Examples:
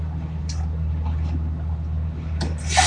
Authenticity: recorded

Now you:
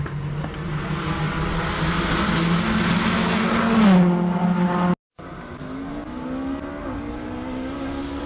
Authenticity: recorded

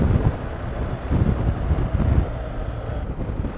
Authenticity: recorded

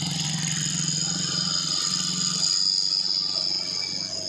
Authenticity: recorded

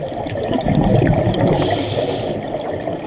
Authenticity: recorded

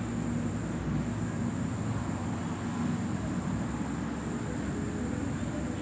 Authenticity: recorded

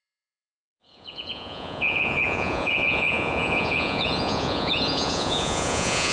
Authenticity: remade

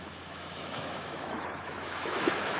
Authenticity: remade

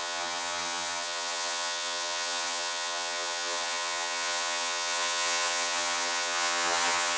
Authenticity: remade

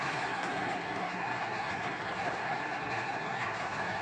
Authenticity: remade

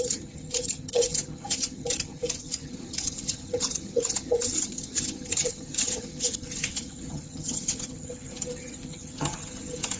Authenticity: remade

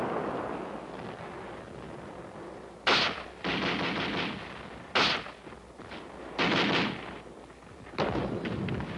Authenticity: recorded